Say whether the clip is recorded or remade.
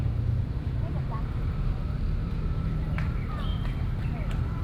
remade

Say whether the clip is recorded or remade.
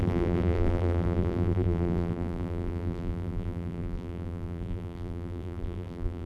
remade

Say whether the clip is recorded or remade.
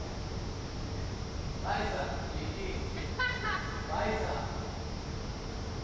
recorded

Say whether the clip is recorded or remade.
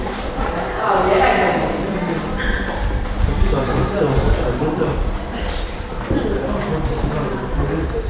remade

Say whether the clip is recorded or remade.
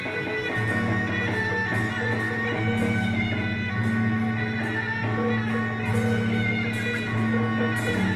recorded